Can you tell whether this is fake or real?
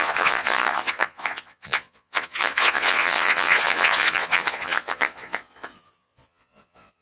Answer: fake